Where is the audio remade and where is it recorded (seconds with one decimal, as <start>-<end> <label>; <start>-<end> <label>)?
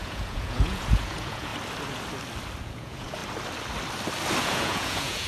0.0-1.5 remade; 1.5-2.6 recorded; 2.6-3.2 remade; 3.2-4.4 recorded; 4.4-5.3 remade